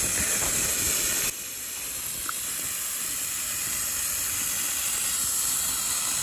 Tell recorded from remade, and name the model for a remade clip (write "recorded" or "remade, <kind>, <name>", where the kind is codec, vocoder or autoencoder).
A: recorded